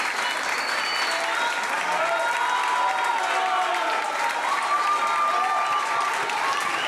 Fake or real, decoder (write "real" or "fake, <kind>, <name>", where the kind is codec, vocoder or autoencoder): real